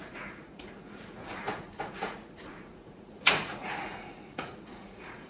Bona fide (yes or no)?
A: no